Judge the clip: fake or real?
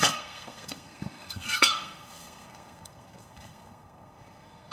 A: fake